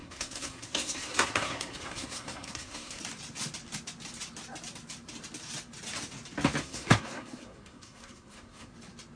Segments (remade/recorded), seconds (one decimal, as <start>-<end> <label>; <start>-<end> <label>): 0.0-3.0 remade; 3.0-6.6 recorded; 6.6-8.7 remade; 8.7-9.2 recorded